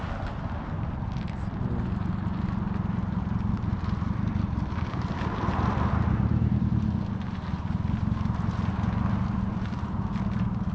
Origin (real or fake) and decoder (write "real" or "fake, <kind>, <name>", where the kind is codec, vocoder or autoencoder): real